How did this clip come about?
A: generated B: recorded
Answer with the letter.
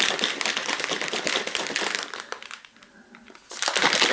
B